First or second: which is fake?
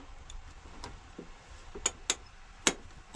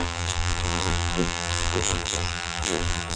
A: second